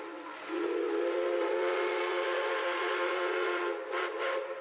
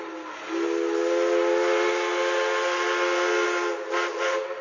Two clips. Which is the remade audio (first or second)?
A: first